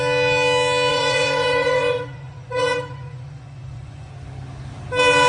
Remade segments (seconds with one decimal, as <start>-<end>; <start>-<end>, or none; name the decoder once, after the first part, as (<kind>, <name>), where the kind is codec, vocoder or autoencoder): 0.9-4.1 (vocoder, Vocos)